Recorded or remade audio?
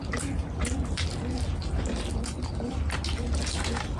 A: recorded